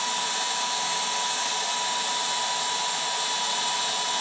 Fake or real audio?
real